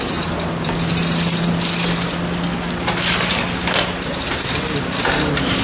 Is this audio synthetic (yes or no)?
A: no